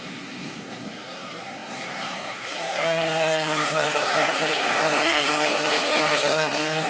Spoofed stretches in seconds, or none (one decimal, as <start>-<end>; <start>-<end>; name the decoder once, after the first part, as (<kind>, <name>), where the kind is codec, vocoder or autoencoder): 0.0-6.9 (codec, SNAC)